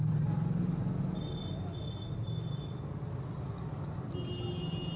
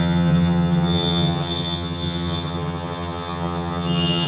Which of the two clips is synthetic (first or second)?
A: second